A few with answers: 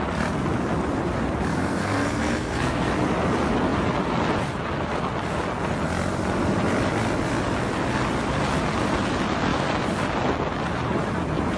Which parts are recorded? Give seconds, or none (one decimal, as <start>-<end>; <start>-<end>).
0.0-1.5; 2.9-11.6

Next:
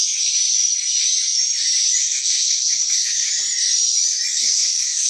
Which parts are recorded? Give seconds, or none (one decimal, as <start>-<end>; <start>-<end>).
0.0-2.0; 3.3-4.3

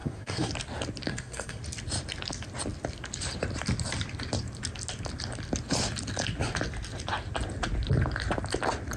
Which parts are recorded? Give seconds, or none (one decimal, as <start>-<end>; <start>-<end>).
0.5-1.1; 1.6-9.0

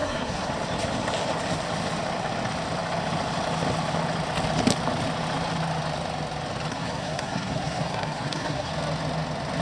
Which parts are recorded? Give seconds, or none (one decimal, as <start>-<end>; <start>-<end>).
0.5-6.7; 8.7-9.6

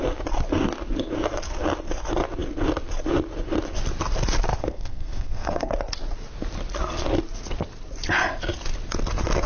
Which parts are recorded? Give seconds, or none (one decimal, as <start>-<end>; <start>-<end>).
0.0-4.6; 5.7-9.5

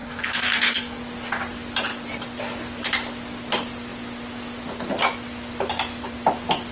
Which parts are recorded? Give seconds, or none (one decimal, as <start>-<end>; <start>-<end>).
1.0-6.7

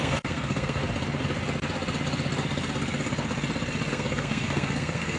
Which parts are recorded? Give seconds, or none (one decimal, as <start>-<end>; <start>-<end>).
0.8-3.9